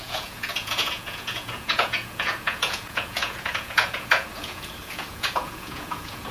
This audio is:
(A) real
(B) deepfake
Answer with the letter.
B